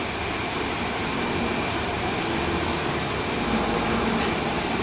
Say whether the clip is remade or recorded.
recorded